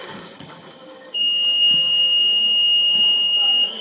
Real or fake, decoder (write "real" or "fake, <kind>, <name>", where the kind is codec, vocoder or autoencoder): fake, codec, DAC